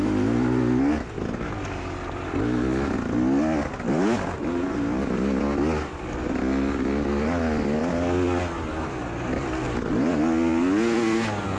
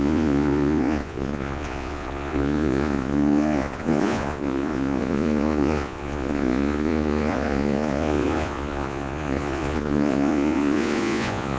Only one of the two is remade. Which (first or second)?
second